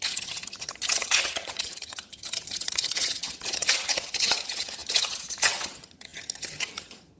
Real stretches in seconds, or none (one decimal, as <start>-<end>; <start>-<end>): none